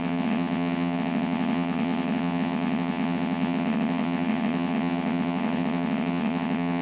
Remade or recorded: remade